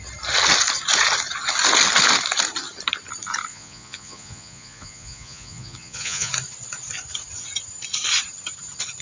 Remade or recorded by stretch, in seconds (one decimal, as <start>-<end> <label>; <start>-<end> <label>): 0.0-3.5 recorded; 3.5-6.3 remade; 6.3-9.0 recorded